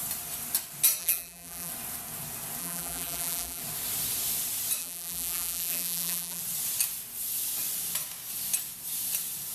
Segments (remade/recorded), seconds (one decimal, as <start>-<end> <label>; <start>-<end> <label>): 0.0-1.0 recorded; 1.0-1.7 remade; 1.7-2.6 recorded; 2.6-3.6 remade; 3.6-4.8 recorded; 4.8-6.4 remade; 6.4-9.5 recorded